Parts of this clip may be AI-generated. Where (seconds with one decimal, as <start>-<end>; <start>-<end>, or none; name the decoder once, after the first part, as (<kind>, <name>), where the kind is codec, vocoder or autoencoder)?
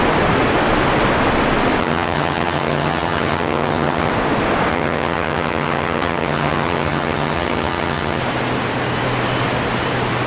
1.8-4.1 (vocoder, HiFi-GAN); 4.7-8.2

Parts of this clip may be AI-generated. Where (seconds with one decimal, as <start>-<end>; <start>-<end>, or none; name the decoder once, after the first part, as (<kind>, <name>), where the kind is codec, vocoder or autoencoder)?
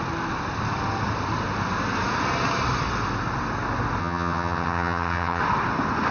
4.0-5.4 (vocoder, HiFi-GAN)